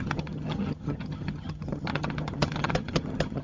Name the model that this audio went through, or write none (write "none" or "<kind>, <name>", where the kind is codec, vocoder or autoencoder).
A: vocoder, HiFi-GAN